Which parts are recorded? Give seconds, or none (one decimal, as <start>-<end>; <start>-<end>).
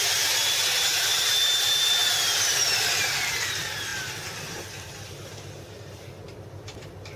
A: none